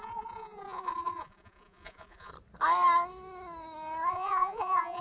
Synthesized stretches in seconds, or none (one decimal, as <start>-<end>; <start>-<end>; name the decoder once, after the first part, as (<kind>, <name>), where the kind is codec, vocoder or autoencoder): 0.0-2.3 (vocoder, Vocos); 4.1-5.0